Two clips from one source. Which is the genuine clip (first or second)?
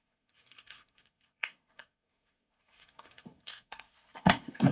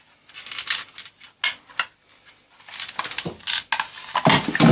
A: second